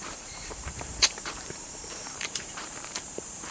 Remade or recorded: remade